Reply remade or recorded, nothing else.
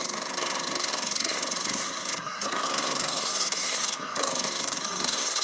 remade